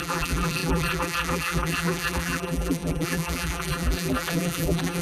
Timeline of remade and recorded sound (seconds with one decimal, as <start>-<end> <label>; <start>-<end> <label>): 0.0-5.0 remade

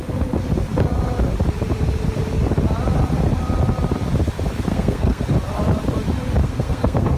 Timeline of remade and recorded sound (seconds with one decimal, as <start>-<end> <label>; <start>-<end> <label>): 0.0-4.7 recorded; 4.7-5.2 remade; 5.2-6.4 recorded; 6.4-7.2 remade

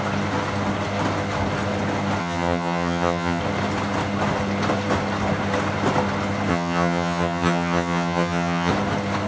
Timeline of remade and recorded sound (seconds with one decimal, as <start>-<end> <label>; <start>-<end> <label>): 0.0-2.2 recorded; 2.2-3.4 remade; 3.4-6.5 recorded; 6.5-8.7 remade; 8.7-9.3 recorded

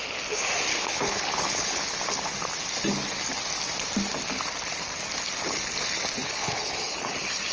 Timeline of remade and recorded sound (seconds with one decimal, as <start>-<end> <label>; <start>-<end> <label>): 0.0-0.7 recorded; 0.7-1.8 remade; 1.8-6.2 recorded; 6.2-7.1 remade; 7.1-7.5 recorded

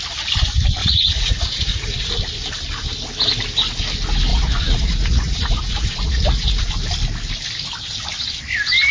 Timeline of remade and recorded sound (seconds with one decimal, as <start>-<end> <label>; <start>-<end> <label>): 0.0-0.8 recorded; 0.8-2.1 remade; 2.1-4.3 recorded; 4.3-6.7 remade; 6.7-8.9 recorded